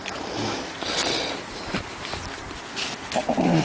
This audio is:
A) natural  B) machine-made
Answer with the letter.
A